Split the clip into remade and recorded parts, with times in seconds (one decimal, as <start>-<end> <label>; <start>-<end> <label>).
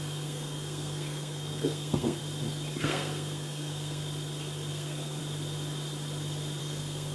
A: 0.0-2.2 remade; 2.2-2.8 recorded; 2.8-4.0 remade; 4.0-4.7 recorded; 4.7-5.2 remade; 5.2-6.6 recorded; 6.6-7.1 remade